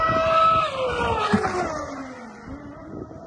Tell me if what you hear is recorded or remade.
recorded